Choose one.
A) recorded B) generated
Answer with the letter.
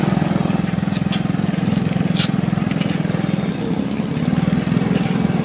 A